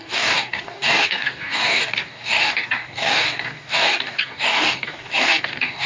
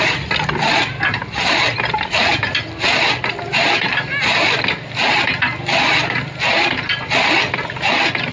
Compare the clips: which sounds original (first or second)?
second